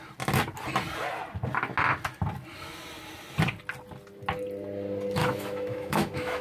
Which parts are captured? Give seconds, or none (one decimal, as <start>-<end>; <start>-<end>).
0.0-5.2